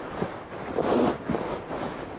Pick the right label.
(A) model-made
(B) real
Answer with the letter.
B